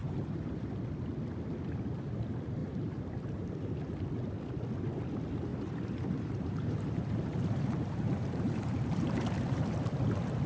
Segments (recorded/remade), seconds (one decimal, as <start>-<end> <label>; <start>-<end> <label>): 0.0-0.7 remade; 0.7-2.6 recorded; 2.6-3.7 remade; 3.7-5.5 recorded; 5.5-9.6 remade; 9.6-10.5 recorded